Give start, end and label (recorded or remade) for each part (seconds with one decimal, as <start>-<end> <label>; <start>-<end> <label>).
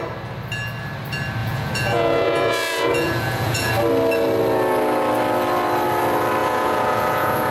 0.0-1.4 recorded; 1.4-3.7 remade; 3.7-6.4 recorded; 6.4-7.5 remade